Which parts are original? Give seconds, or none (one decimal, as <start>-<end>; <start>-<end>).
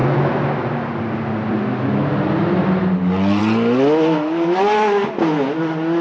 0.0-6.0